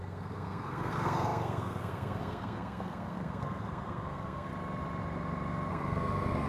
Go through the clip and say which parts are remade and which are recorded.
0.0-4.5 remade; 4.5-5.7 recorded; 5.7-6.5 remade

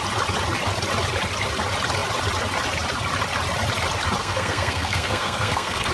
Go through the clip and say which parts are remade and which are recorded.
0.0-4.2 recorded; 4.2-5.9 remade

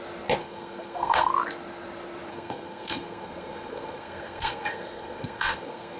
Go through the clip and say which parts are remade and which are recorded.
0.0-0.4 recorded; 0.4-1.3 remade; 1.3-2.3 recorded; 2.3-6.0 remade